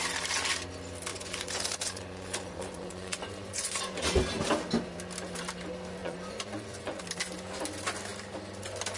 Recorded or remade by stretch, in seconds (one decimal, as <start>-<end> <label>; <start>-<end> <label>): 0.0-1.1 recorded; 1.1-3.9 remade; 3.9-6.0 recorded; 6.0-7.0 remade; 7.0-9.0 recorded